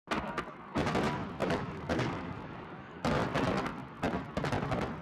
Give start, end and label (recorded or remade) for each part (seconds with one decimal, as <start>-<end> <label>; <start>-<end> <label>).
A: 0.0-1.4 recorded; 1.4-3.1 remade; 3.1-5.0 recorded